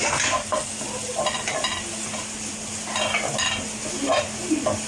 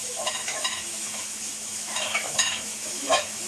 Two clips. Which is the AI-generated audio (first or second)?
second